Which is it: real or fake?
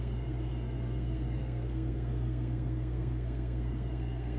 fake